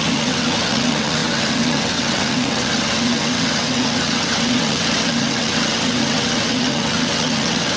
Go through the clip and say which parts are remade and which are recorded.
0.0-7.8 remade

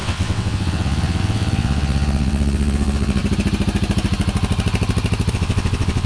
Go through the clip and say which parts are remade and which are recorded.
0.0-3.2 remade; 3.2-5.3 recorded; 5.3-6.1 remade

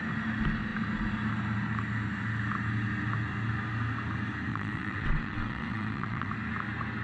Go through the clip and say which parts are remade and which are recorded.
0.0-4.5 recorded; 4.5-6.3 remade; 6.3-7.0 recorded

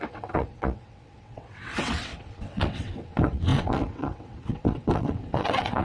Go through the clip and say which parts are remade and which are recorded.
0.0-5.8 remade

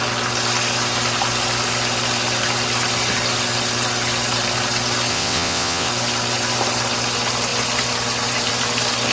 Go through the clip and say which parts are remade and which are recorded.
0.0-5.1 recorded; 5.1-5.9 remade; 5.9-9.1 recorded